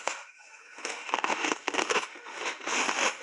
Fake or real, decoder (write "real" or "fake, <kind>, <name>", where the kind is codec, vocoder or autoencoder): fake, autoencoder, DAC-VAE